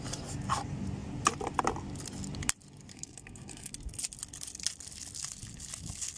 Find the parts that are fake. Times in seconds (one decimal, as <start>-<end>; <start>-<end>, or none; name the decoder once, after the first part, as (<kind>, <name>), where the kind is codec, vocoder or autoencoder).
2.9-3.7 (codec, SNAC)